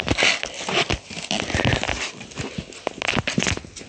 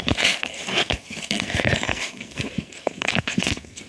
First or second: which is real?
first